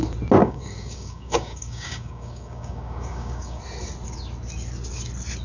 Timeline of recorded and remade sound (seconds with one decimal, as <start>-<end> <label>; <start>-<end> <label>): 0.0-0.4 recorded; 0.4-3.6 remade; 3.6-5.4 recorded